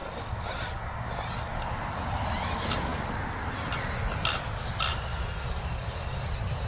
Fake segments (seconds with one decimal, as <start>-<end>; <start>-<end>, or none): none